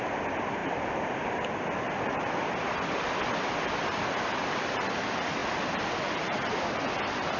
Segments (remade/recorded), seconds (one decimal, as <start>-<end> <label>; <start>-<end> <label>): 0.0-7.4 recorded